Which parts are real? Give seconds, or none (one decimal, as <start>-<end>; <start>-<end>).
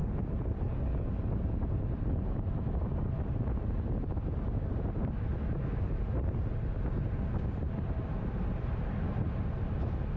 0.0-10.2